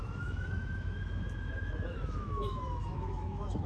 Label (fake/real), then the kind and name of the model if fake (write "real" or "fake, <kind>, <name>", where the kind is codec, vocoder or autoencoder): fake, autoencoder, DAC-VAE